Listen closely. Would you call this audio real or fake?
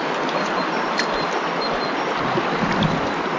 real